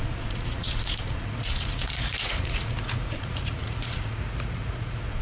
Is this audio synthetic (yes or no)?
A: yes